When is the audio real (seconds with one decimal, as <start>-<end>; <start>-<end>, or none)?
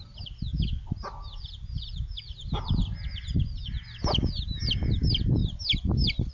0.0-6.3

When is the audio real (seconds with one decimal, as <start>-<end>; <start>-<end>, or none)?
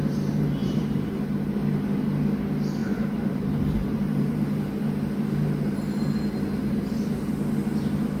0.0-0.6; 1.1-2.8; 4.7-8.2